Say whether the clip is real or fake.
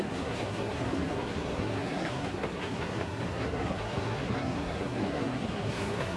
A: fake